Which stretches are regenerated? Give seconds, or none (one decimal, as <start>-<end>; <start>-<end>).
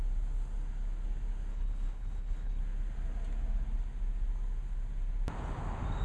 1.5-2.6